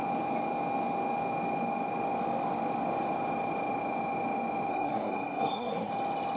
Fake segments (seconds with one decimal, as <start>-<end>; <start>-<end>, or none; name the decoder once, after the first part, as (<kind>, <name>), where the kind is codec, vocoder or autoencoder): 4.7-5.9 (codec, SNAC)